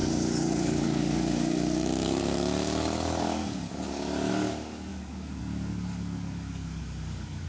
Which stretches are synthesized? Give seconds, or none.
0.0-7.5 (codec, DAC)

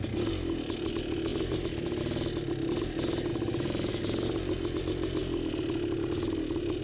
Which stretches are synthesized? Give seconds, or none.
none

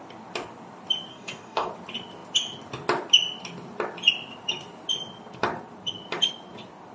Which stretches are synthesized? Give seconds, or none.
1.1-1.7 (codec, DAC)